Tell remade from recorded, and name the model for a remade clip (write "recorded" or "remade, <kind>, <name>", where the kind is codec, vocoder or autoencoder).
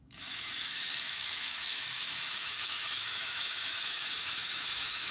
remade, autoencoder, DAC-VAE